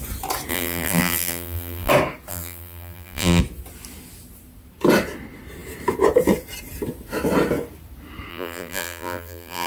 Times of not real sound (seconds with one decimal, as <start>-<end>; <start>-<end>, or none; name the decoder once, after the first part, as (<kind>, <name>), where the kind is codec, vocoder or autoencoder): 0.5-1.9 (vocoder, BigVGAN v2); 2.3-3.4; 8.3-9.7